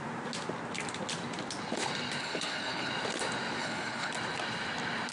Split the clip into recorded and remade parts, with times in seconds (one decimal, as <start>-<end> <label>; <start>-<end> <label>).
0.0-2.2 recorded; 2.2-2.9 remade; 2.9-3.6 recorded; 3.6-4.1 remade; 4.1-5.1 recorded